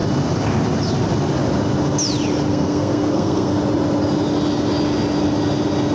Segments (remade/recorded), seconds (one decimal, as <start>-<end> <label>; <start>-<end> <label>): 0.0-2.5 recorded; 2.5-3.6 remade; 3.6-5.9 recorded